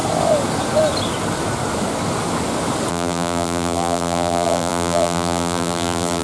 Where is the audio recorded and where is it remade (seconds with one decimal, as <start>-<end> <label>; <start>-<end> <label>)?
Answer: 0.0-2.9 recorded; 2.9-6.2 remade